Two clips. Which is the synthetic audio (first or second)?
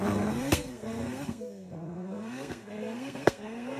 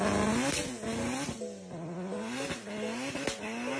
first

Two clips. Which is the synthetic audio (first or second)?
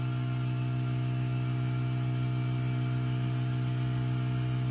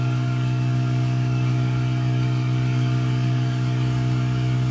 second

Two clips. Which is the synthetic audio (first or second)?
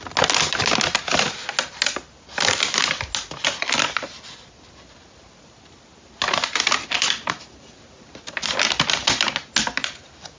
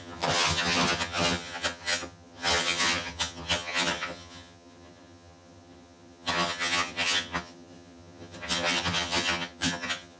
second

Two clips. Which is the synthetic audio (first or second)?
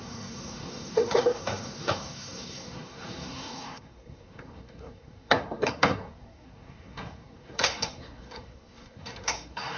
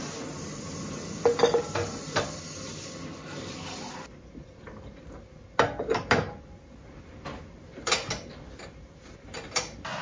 first